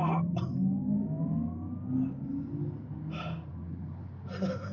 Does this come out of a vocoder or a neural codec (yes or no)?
no